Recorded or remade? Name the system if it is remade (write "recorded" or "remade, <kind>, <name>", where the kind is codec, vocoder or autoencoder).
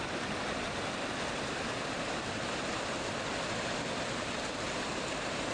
recorded